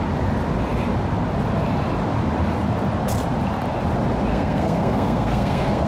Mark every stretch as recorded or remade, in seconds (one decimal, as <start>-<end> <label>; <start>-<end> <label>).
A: 0.0-4.3 recorded; 4.3-5.9 remade